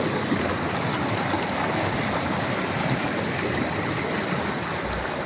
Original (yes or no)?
yes